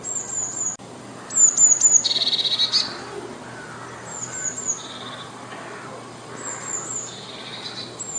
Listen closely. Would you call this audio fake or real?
real